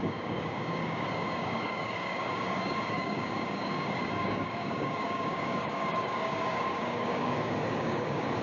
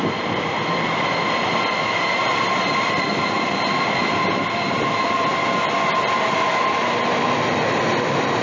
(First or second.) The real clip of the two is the second